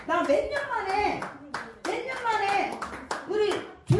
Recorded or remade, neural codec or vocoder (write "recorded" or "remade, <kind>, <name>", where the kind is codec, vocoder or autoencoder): recorded